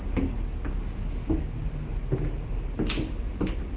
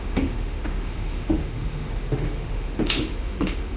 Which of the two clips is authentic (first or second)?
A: first